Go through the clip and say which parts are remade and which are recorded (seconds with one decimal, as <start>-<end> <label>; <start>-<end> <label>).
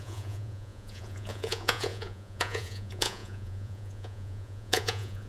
0.0-5.3 remade